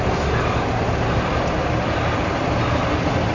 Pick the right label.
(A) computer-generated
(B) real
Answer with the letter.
B